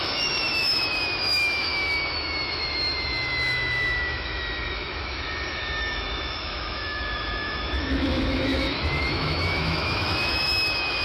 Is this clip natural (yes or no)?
no